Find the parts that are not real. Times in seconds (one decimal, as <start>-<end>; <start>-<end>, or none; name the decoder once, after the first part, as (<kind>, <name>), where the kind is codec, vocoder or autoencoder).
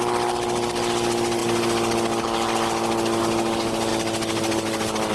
none